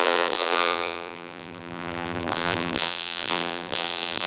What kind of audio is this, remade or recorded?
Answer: remade